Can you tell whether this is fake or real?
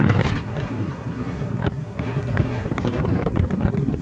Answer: fake